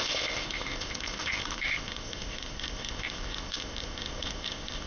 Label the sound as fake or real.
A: fake